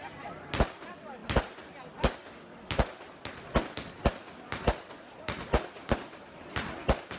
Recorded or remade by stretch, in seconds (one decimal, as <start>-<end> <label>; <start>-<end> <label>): 0.0-7.2 recorded